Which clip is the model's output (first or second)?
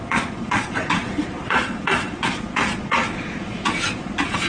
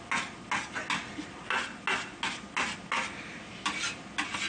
first